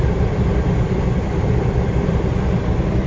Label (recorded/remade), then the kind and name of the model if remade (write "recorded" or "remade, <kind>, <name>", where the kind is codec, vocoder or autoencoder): remade, vocoder, BigVGAN v2